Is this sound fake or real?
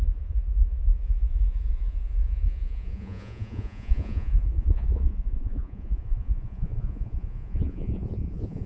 fake